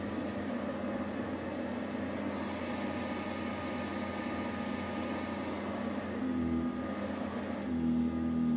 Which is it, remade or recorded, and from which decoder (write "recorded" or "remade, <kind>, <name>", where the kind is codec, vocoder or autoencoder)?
recorded